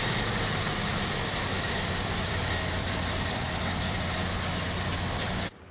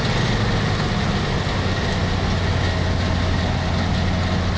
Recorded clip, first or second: second